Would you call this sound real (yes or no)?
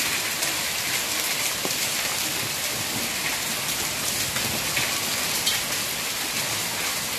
yes